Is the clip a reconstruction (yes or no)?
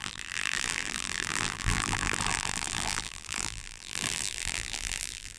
yes